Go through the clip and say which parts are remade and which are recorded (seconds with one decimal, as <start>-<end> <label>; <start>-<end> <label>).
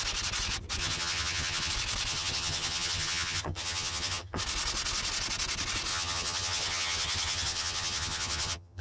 0.0-0.8 recorded; 0.8-1.7 remade; 1.7-2.1 recorded; 2.1-4.4 remade; 4.4-5.9 recorded; 5.9-8.8 remade